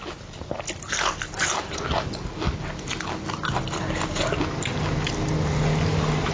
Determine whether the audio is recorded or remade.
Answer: recorded